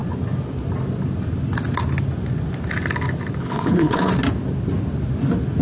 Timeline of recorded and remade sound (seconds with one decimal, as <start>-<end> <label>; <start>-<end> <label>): 0.0-3.4 recorded; 3.4-4.1 remade; 4.1-5.6 recorded